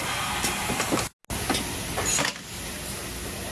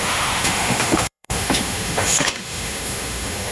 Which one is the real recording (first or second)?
first